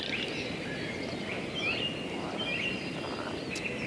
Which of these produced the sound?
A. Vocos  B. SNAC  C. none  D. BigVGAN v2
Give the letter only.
C